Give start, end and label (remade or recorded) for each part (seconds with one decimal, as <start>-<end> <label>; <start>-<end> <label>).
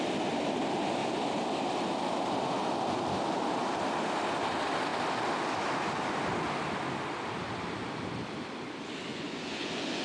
0.0-9.1 recorded; 9.1-10.0 remade